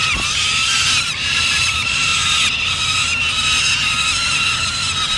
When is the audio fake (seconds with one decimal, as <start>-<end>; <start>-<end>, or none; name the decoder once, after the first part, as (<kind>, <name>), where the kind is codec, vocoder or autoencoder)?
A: 0.0-2.1 (vocoder, BigVGAN v2)